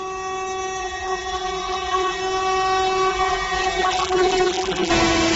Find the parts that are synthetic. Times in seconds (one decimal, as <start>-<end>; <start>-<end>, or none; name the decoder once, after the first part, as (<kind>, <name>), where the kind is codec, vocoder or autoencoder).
0.8-2.2 (vocoder, BigVGAN v2); 3.1-4.9